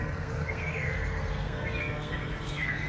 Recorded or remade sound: remade